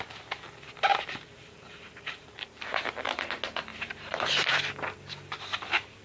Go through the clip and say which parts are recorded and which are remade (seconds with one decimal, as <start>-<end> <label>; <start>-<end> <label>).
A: 0.0-0.9 recorded; 0.9-2.3 remade; 2.3-3.7 recorded; 3.7-4.6 remade; 4.6-6.0 recorded